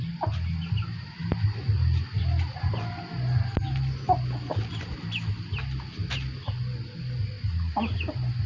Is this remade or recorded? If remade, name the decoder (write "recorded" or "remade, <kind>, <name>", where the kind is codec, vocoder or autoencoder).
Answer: recorded